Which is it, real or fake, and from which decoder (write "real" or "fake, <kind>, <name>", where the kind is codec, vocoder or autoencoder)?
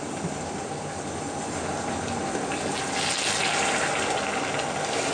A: real